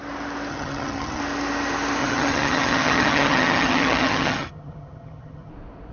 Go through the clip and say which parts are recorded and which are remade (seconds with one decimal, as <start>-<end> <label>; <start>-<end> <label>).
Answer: 0.0-0.5 recorded; 0.5-1.2 remade; 1.2-2.0 recorded; 2.0-5.5 remade; 5.5-5.9 recorded